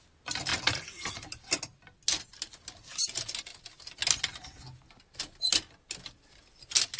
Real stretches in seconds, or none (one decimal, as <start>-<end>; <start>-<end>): 0.0-7.0